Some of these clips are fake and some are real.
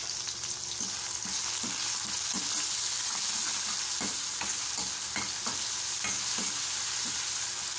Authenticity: real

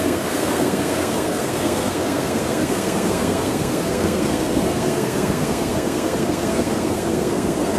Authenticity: fake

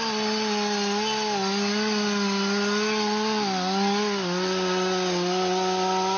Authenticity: real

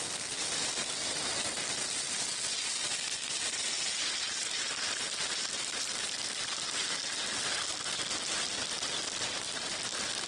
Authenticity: fake